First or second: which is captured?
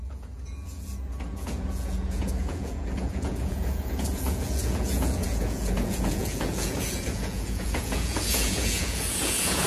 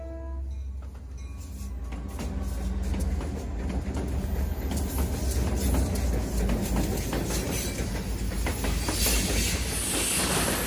second